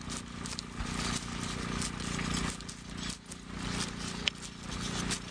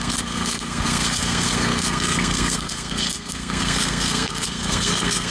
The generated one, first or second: second